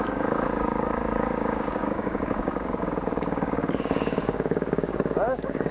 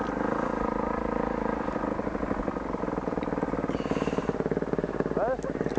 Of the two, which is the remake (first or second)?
first